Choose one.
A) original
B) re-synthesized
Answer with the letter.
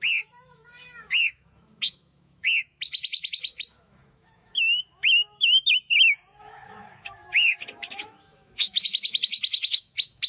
B